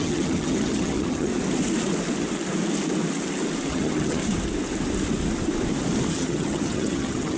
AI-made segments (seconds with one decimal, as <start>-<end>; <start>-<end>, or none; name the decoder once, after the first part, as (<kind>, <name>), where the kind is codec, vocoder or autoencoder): 0.0-1.3 (vocoder, HiFi-GAN); 3.7-4.2; 6.1-7.4